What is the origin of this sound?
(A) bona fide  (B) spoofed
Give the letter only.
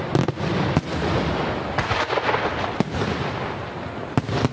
A